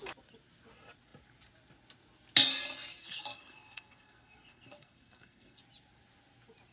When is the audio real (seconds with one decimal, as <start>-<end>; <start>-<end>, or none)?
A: 0.0-3.0; 5.6-6.7